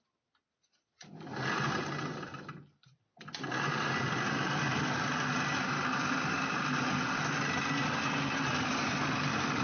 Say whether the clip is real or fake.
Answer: real